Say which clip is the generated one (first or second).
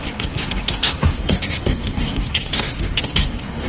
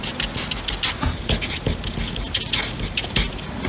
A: first